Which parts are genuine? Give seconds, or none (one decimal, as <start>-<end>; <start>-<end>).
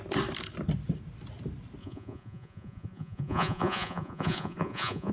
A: 0.0-1.8